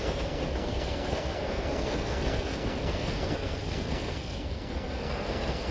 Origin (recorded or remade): remade